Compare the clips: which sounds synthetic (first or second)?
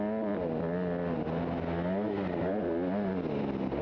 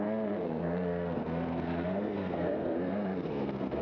second